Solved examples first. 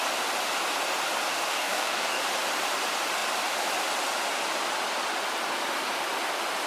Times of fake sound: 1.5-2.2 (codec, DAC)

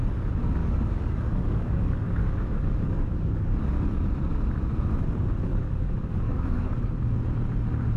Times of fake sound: 0.6-3.6 (codec, DAC); 5.5-6.7